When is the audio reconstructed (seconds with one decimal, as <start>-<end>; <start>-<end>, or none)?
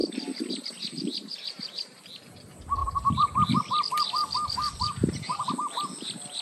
1.3-2.2; 2.8-3.6